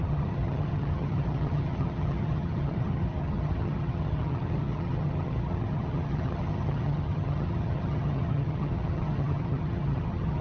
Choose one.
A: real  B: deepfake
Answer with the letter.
B